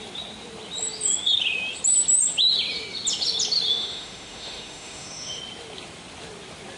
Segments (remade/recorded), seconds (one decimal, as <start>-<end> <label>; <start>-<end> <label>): 0.0-3.7 recorded; 3.7-5.4 remade; 5.4-6.8 recorded